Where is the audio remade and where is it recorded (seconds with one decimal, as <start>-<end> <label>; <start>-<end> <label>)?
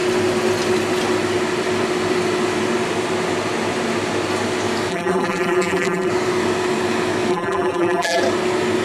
0.0-4.9 recorded; 4.9-6.1 remade; 6.1-7.3 recorded; 7.3-8.2 remade; 8.2-8.8 recorded